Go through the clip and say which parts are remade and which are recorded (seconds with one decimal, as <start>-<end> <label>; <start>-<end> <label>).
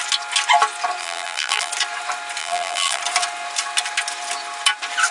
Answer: 0.0-1.0 recorded; 1.0-1.7 remade; 1.7-2.4 recorded; 2.4-3.0 remade; 3.0-5.1 recorded